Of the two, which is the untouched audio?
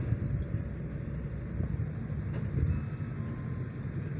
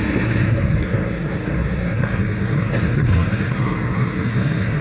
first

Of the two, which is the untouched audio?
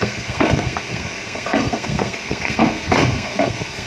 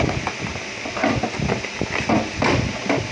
second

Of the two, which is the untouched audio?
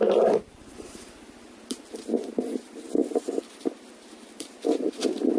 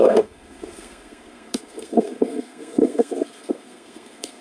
first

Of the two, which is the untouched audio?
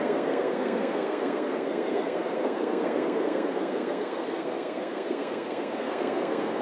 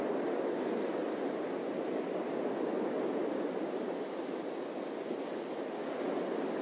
second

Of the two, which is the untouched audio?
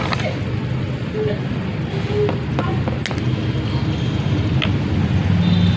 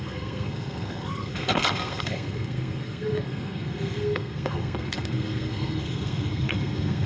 first